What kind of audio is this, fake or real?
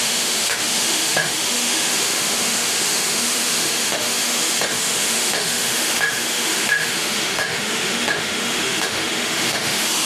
fake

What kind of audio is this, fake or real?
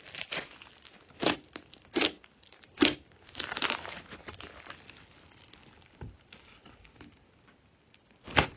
real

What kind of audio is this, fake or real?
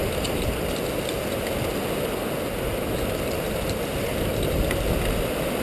real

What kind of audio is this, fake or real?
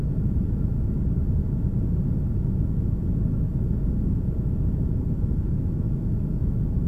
fake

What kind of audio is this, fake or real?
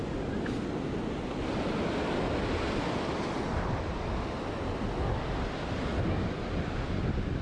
real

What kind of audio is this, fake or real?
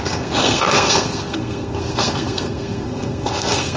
fake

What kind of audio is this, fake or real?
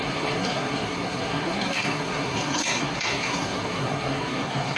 fake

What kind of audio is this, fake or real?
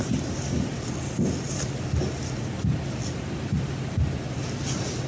real